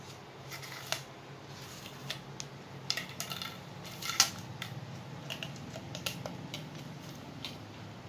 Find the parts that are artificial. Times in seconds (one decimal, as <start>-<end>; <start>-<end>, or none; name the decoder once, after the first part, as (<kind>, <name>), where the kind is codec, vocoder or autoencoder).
none